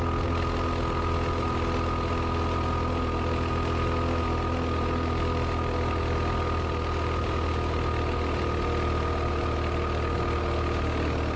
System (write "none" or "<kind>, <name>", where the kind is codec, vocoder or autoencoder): none